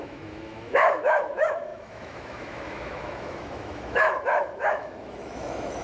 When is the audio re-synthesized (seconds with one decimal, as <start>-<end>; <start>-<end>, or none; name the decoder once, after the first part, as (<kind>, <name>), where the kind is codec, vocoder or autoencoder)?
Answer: 0.0-5.8 (autoencoder, DAC-VAE)